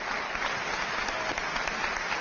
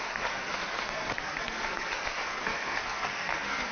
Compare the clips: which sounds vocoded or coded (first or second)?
second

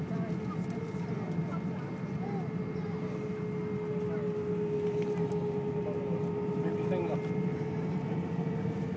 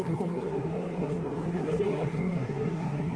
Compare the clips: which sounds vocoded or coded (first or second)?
second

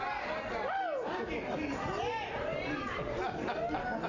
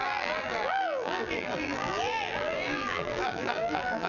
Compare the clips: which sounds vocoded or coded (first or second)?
second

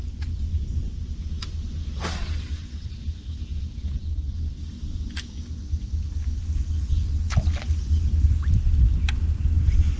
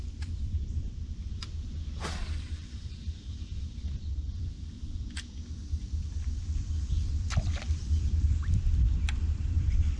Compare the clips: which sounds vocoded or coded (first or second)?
second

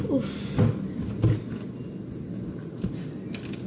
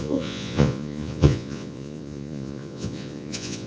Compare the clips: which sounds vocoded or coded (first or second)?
second